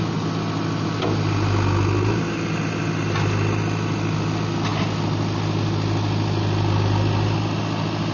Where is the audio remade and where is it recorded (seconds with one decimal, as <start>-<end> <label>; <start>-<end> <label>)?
0.0-8.1 recorded